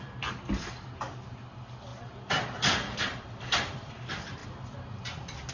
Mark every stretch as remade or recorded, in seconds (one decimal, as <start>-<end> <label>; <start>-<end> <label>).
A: 0.0-1.9 remade; 1.9-3.0 recorded; 3.0-5.5 remade